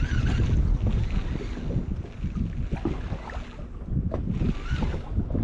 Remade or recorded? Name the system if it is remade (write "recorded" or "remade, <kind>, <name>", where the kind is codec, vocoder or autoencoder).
recorded